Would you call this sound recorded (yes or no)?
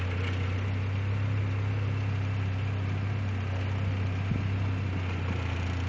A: yes